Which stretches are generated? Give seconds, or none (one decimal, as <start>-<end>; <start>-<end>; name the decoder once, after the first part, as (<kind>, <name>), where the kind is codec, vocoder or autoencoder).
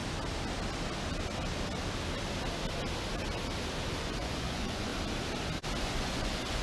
4.0-4.9 (vocoder, Vocos); 5.8-6.6